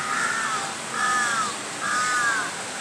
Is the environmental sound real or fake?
real